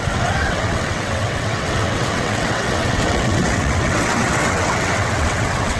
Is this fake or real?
fake